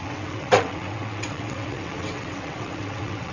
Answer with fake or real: fake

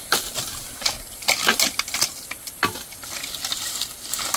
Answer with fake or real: real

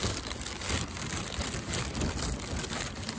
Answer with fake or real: real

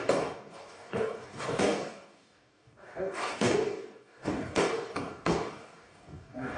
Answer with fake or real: fake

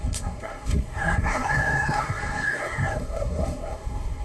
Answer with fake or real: fake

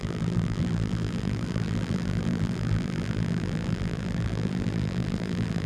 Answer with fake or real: fake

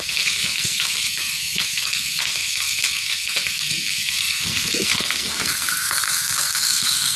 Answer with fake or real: fake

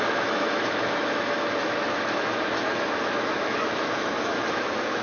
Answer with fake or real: fake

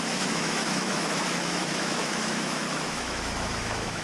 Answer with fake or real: fake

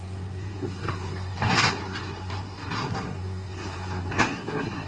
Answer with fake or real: fake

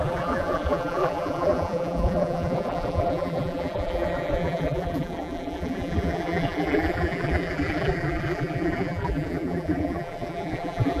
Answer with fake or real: fake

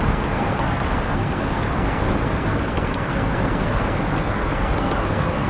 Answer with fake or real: fake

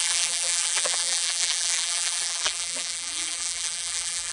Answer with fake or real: fake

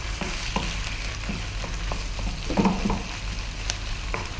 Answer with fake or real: fake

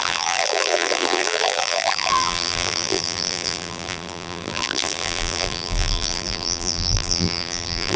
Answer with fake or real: fake